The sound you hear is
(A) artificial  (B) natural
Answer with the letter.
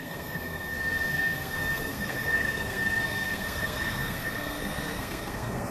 A